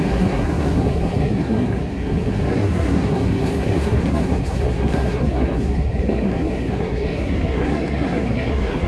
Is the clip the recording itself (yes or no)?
no